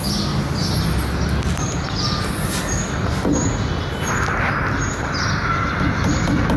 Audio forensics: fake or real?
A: real